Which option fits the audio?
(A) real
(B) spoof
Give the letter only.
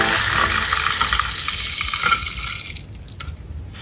A